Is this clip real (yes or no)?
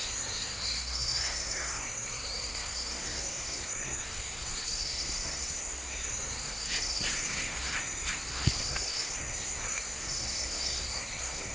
no